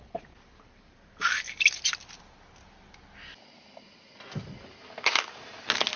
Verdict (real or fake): real